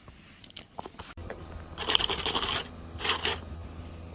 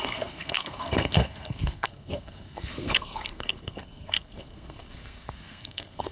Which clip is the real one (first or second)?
first